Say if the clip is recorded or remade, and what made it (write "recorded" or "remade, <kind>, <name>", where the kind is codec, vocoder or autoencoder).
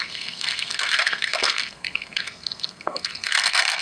remade, codec, SNAC